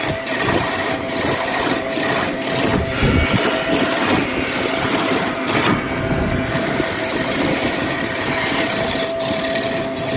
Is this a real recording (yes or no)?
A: yes